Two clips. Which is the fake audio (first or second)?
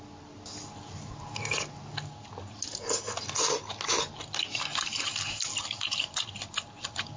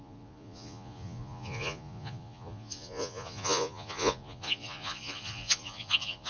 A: second